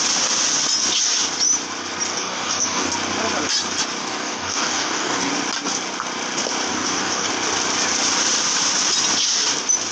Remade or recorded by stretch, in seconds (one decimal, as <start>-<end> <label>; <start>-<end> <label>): 0.0-2.1 recorded; 2.1-2.9 remade; 2.9-4.0 recorded; 4.0-5.3 remade; 5.3-6.7 recorded; 6.7-7.3 remade; 7.3-9.9 recorded